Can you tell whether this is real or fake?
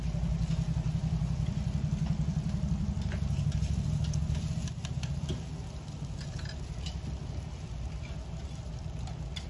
real